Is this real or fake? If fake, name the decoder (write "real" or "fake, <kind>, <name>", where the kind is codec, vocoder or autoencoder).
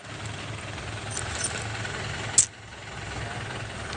real